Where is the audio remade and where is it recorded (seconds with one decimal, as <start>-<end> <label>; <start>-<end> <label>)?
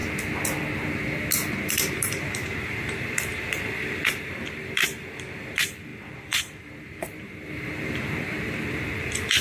0.0-1.7 recorded; 1.7-9.4 remade